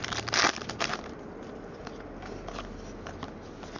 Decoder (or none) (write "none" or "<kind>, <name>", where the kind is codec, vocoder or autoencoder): none